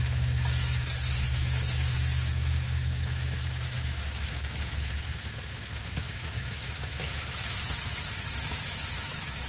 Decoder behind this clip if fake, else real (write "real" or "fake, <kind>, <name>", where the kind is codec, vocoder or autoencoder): fake, autoencoder, DAC-VAE